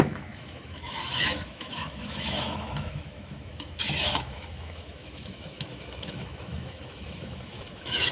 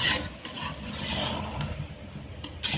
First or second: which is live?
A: second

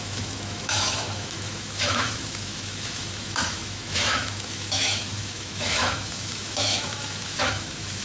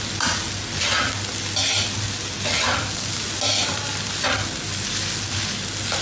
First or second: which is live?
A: second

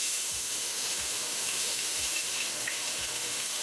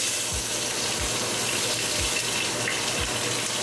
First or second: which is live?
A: second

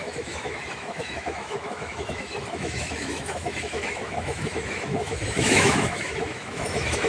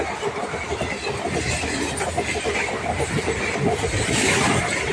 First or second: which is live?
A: second